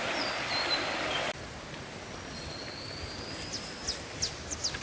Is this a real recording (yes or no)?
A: yes